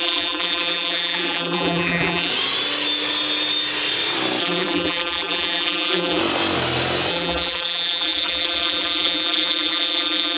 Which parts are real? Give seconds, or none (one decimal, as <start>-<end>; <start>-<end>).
2.3-4.4; 6.2-7.1